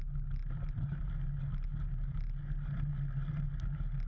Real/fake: real